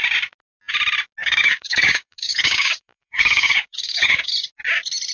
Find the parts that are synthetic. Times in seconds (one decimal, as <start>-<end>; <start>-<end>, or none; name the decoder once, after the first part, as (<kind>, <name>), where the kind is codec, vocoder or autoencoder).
1.2-4.3 (codec, DAC)